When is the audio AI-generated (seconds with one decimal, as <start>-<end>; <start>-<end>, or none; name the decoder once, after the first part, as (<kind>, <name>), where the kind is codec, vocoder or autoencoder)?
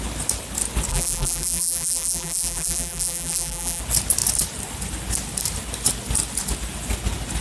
0.9-3.8 (vocoder, BigVGAN v2)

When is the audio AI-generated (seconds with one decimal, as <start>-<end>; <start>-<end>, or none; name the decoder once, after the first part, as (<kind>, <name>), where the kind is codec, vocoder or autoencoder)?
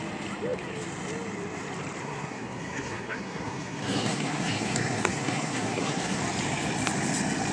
2.0-6.2 (codec, SNAC)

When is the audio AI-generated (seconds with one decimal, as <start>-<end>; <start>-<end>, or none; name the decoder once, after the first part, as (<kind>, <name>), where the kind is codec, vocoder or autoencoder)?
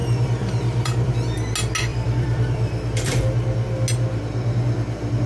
0.0-1.1 (vocoder, BigVGAN v2); 1.9-3.2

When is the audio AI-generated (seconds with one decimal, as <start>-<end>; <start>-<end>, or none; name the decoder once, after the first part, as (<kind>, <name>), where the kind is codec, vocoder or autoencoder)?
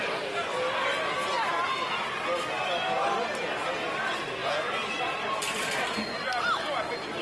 0.5-1.2 (vocoder, BigVGAN v2)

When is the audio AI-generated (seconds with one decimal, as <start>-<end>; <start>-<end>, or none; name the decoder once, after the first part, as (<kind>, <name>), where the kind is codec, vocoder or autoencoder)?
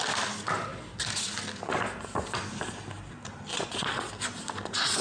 3.5-4.1 (vocoder, Vocos)